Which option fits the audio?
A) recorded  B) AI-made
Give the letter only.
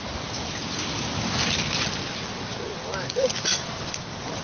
A